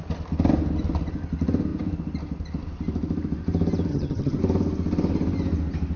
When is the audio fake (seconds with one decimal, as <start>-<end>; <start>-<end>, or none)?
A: 3.9-4.4